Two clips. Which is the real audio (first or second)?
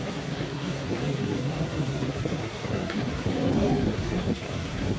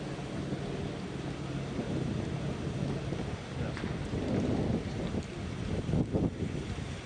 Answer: second